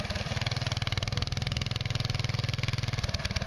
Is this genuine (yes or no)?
yes